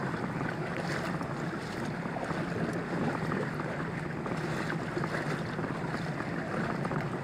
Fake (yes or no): no